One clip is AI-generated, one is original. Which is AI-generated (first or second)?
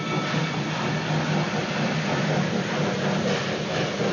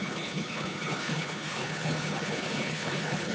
second